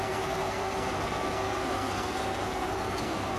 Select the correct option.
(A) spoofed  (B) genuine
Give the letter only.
A